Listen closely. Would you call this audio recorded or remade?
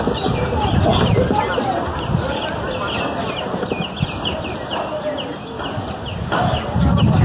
recorded